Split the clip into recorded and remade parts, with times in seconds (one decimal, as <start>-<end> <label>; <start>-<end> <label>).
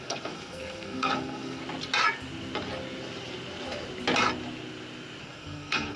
0.0-1.6 remade; 1.6-5.2 recorded; 5.2-6.0 remade